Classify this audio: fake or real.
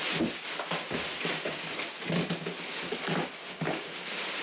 real